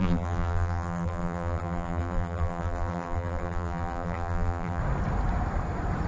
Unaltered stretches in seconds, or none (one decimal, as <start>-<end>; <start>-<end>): 4.8-6.1